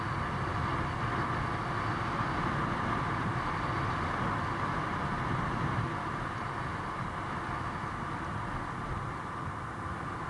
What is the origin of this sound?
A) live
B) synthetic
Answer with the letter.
A